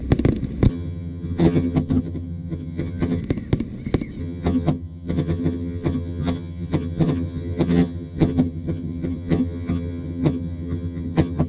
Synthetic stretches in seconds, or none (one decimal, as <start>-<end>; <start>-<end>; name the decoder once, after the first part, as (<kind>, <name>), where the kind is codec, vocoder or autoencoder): 0.7-3.2 (vocoder, HiFi-GAN); 4.2-11.5